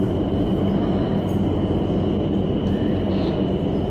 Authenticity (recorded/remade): recorded